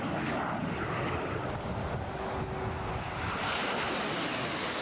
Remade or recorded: recorded